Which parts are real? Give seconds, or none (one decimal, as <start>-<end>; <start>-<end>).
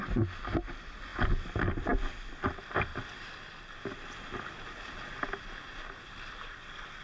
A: 0.0-7.0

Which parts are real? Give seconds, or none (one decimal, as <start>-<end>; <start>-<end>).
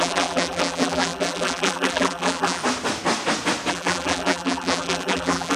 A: 2.6-3.7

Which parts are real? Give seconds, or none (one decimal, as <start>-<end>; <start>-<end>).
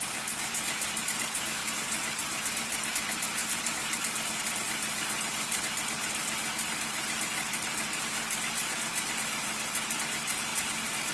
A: 0.0-1.6; 2.9-3.4; 5.6-10.5